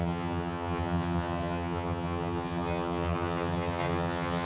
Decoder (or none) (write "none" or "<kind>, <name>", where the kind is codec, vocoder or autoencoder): vocoder, HiFi-GAN